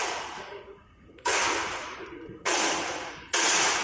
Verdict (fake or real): fake